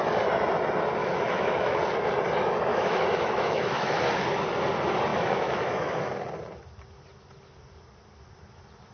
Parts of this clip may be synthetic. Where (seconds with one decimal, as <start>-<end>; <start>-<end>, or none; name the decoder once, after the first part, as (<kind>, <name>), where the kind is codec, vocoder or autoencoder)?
1.0-1.8 (autoencoder, DAC-VAE); 2.7-4.0; 5.1-6.1